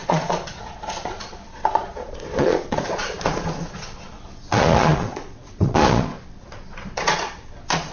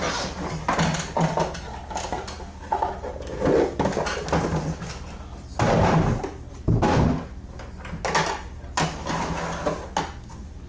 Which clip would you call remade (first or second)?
first